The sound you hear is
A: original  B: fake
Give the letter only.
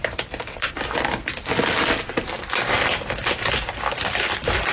B